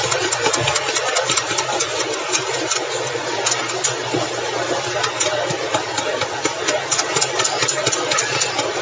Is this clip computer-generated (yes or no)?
no